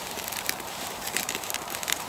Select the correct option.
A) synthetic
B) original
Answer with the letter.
A